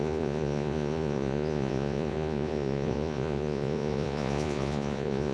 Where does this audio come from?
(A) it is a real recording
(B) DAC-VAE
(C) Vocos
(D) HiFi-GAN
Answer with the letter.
C